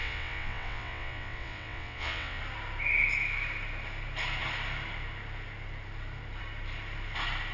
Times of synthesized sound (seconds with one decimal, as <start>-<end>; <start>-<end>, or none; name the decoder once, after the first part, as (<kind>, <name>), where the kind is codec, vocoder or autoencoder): 0.0-2.4 (vocoder, WaveNeXt)